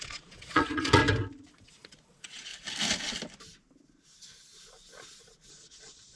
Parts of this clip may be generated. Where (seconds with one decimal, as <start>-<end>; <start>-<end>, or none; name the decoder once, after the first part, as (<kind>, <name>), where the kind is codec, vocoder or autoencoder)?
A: 0.0-1.0 (vocoder, Vocos); 1.5-2.5; 5.5-6.2